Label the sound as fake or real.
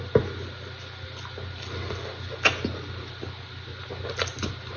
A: real